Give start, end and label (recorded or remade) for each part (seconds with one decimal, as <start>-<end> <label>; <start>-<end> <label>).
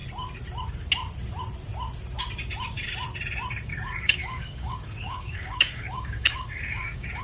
0.0-3.7 recorded; 3.7-7.2 remade